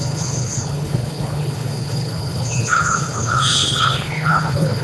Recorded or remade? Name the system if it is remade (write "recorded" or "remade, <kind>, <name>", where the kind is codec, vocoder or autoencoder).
remade, codec, HILCodec